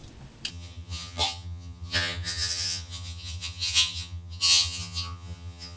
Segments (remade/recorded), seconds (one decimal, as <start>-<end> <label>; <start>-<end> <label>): 0.0-0.5 recorded; 0.5-5.8 remade